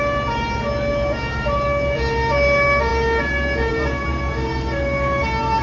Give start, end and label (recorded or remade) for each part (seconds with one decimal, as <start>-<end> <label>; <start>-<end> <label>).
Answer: 0.0-5.6 recorded